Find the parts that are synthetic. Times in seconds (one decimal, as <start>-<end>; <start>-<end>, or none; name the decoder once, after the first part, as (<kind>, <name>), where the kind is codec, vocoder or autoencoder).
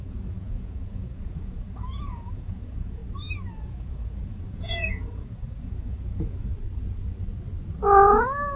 0.0-3.0 (vocoder, Vocos); 3.6-6.5